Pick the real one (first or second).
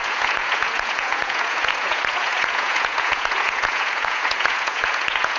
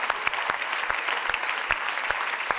second